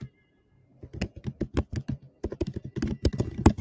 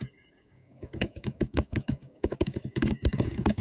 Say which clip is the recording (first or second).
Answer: first